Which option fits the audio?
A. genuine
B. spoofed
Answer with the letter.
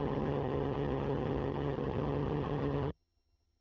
B